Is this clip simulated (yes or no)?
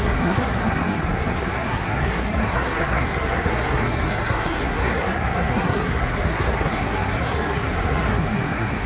yes